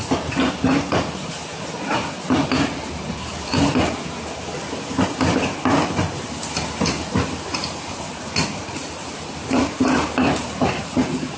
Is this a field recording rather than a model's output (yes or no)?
yes